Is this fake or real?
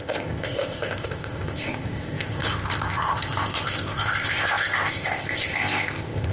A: fake